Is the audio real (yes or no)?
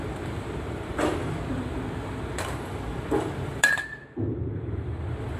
no